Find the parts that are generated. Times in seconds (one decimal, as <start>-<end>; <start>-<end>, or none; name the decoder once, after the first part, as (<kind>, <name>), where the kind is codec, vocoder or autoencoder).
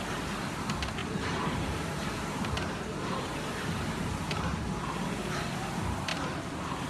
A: 1.0-4.8 (vocoder, BigVGAN v2); 6.1-6.9